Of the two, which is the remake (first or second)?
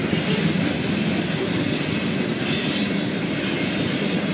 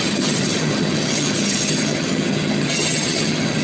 second